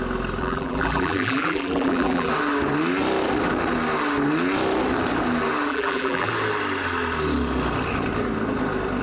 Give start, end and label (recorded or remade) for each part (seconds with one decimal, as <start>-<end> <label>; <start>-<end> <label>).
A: 0.0-0.4 recorded; 0.4-2.3 remade; 2.3-5.7 recorded; 5.7-6.3 remade; 6.3-9.0 recorded